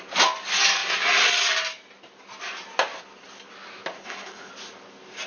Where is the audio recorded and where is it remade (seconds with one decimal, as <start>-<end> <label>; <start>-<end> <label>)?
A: 0.0-4.0 recorded; 4.0-4.5 remade; 4.5-5.3 recorded